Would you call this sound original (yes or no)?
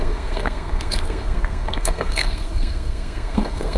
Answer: no